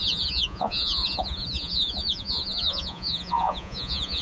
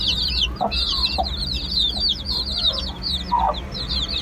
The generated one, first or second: first